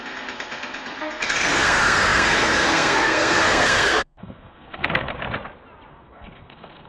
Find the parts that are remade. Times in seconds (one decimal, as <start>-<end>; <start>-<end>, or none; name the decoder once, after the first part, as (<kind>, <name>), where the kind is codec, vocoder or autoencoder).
0.0-5.1 (codec, SNAC); 5.9-6.9